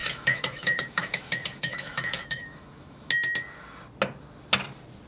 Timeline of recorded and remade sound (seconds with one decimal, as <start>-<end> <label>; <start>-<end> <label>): 0.0-3.1 remade; 3.1-5.1 recorded

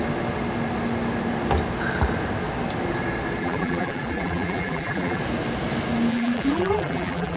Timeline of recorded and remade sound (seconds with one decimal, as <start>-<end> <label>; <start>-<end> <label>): 0.0-3.4 recorded; 3.4-5.2 remade; 5.2-6.1 recorded; 6.1-7.4 remade

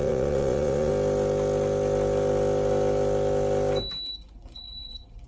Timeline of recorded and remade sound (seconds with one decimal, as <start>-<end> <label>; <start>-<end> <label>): 0.0-0.9 remade; 0.9-4.1 recorded; 4.1-5.3 remade

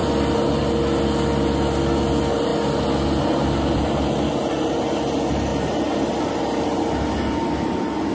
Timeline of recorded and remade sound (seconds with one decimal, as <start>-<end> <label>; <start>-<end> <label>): 0.0-8.1 recorded

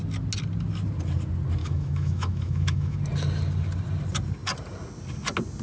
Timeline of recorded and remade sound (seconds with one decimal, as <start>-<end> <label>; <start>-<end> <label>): 0.0-1.6 recorded; 1.6-3.0 remade; 3.0-5.6 recorded

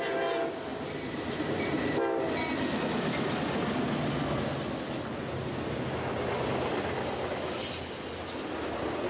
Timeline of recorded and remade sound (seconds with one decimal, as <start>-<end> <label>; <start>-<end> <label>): 0.0-9.1 recorded

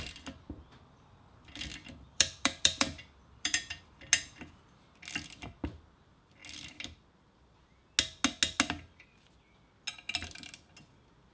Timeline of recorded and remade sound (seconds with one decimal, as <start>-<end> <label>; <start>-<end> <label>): 0.0-1.7 recorded; 1.7-3.8 remade; 3.8-11.3 recorded